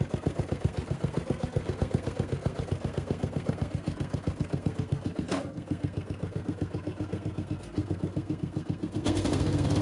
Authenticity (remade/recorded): remade